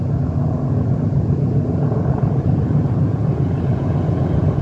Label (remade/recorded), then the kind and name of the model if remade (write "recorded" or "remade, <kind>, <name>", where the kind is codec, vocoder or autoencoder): remade, vocoder, Vocos